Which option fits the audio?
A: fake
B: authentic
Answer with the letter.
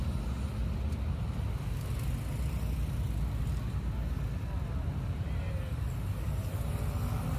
B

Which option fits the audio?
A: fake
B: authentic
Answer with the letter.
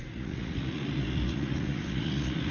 A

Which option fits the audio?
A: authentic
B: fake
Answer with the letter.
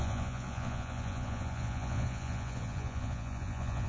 B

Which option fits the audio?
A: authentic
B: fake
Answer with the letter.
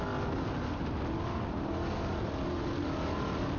A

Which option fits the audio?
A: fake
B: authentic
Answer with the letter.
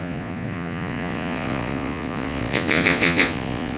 A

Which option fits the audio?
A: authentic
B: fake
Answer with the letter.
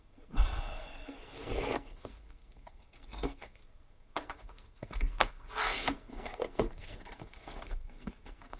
B